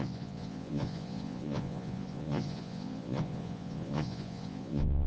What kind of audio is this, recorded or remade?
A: remade